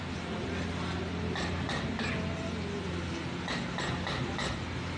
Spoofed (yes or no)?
no